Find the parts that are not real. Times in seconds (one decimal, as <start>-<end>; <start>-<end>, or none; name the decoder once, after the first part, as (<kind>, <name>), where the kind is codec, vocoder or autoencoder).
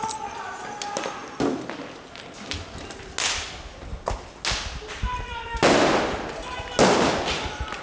none